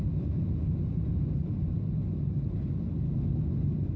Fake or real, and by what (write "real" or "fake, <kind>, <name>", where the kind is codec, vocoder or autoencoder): real